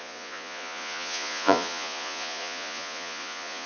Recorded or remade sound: remade